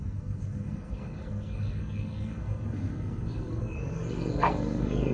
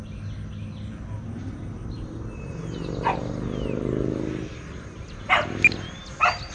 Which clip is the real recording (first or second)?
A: second